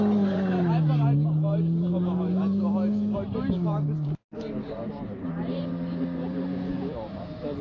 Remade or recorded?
remade